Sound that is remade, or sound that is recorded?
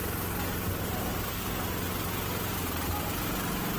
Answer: recorded